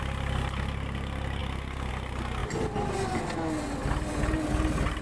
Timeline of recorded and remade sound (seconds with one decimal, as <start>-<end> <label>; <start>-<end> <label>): 0.0-5.0 recorded